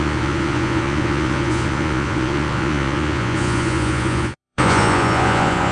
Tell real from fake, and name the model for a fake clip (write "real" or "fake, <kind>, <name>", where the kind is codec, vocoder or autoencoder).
fake, vocoder, Vocos